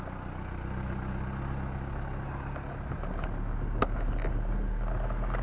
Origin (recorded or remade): recorded